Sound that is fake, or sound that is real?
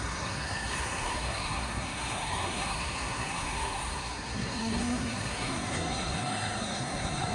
fake